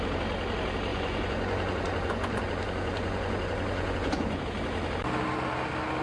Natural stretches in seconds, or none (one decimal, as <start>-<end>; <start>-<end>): 0.0-0.9; 4.4-6.0